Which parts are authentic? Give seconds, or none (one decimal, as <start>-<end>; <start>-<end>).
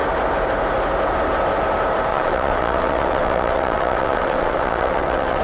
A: 0.0-2.1